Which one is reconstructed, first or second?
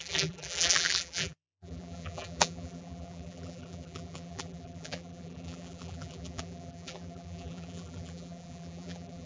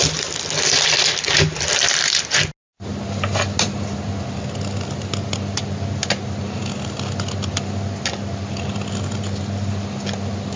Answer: first